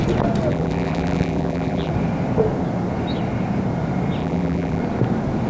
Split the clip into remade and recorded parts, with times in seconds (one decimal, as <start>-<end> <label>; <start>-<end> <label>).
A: 0.0-0.5 recorded; 0.5-1.9 remade; 1.9-4.2 recorded; 4.2-4.8 remade; 4.8-5.5 recorded